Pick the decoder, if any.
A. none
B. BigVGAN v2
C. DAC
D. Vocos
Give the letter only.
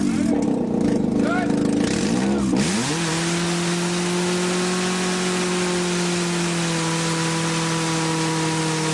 A